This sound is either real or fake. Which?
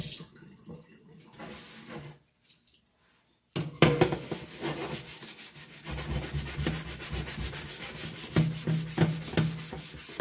real